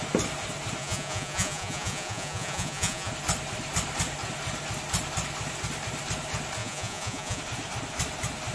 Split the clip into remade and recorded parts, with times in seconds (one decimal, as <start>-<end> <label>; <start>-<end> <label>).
0.0-0.8 recorded; 0.8-3.1 remade; 3.1-6.6 recorded; 6.6-7.4 remade; 7.4-8.5 recorded